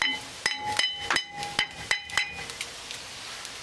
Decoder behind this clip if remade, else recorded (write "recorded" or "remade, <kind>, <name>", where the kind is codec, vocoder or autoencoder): recorded